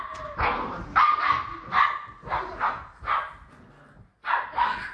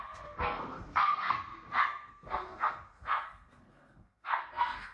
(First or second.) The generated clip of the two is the second